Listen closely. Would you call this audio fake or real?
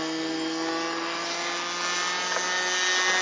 real